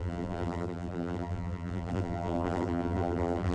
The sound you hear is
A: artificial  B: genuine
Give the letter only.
A